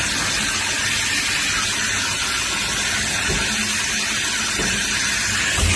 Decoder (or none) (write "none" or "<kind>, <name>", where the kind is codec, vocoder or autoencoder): none